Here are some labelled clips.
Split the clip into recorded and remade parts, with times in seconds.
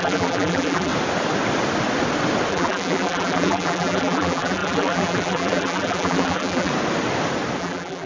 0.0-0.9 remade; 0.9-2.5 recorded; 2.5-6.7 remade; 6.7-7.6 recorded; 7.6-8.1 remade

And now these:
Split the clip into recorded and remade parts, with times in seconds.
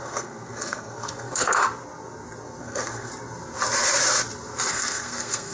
0.0-1.6 remade; 1.6-2.6 recorded; 2.6-3.1 remade; 3.1-4.7 recorded; 4.7-5.5 remade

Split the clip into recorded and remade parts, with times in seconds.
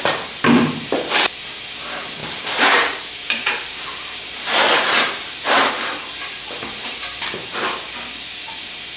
0.0-2.2 recorded; 2.2-5.7 remade; 5.7-6.6 recorded; 6.6-7.2 remade; 7.2-9.0 recorded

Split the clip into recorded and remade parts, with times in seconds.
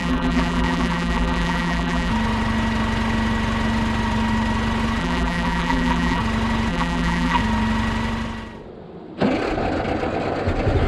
0.0-2.1 remade; 2.1-5.0 recorded; 5.0-6.2 remade; 6.2-6.7 recorded; 6.7-7.4 remade; 7.4-10.9 recorded